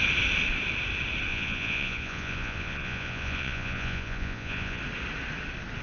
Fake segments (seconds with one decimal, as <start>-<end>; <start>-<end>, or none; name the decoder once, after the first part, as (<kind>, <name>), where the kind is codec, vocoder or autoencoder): 1.3-4.8 (vocoder, Vocos)

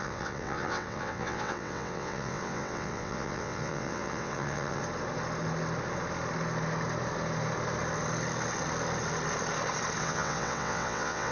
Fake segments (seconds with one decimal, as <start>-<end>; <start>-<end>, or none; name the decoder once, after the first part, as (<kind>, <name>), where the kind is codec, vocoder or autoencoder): 0.0-4.8 (vocoder, WaveNeXt); 10.0-11.3

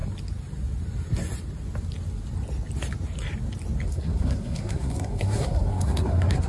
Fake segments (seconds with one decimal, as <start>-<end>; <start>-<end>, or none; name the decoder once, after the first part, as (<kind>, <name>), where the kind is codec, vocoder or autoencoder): 3.9-6.5 (codec, SNAC)

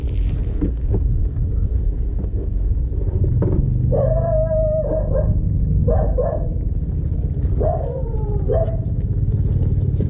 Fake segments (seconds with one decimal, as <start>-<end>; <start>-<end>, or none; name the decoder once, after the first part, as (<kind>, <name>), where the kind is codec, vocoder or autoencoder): 0.5-2.7 (codec, SNAC)

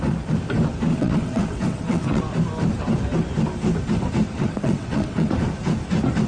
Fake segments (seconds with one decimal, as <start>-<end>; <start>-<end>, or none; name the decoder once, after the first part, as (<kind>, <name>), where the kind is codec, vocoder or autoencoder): 0.9-2.2 (vocoder, WaveNeXt); 4.4-5.3

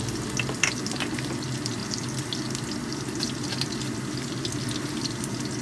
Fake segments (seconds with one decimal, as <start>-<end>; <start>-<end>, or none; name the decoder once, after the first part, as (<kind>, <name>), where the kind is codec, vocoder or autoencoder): none

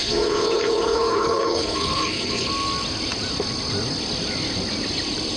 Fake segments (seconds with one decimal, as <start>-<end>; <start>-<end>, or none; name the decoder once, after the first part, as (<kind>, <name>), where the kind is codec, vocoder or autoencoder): 0.0-2.5 (codec, HILCodec)